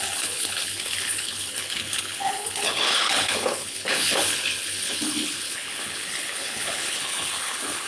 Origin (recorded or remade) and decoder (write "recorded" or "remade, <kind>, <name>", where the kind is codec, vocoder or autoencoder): remade, codec, HILCodec